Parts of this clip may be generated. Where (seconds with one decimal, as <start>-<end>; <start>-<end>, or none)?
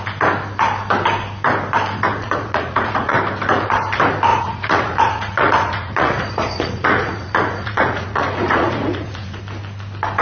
2.1-3.2; 4.3-9.4